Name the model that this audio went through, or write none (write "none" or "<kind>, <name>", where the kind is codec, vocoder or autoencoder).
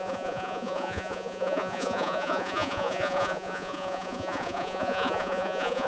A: vocoder, Vocos